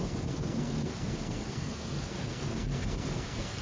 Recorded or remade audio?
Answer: remade